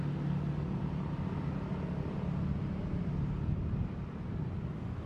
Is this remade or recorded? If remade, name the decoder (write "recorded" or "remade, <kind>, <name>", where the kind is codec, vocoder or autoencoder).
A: recorded